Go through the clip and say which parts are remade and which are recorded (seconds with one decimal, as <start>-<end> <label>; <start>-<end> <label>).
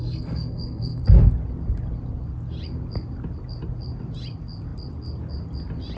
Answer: 0.0-1.0 remade; 1.0-6.0 recorded